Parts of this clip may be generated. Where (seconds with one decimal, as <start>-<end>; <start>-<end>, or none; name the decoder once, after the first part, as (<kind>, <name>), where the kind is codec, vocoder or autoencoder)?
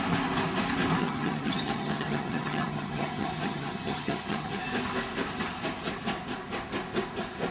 1.0-4.6 (vocoder, HiFi-GAN)